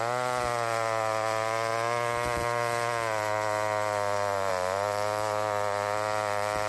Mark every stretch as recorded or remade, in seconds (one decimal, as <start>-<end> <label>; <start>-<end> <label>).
0.0-6.7 recorded